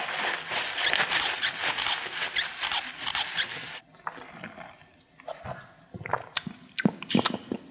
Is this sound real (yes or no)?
yes